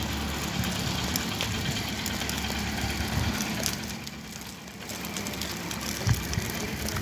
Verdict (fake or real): real